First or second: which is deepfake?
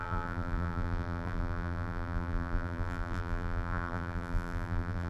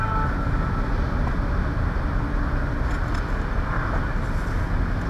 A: first